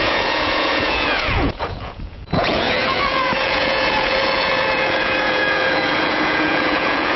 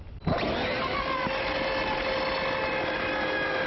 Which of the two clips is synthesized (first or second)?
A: first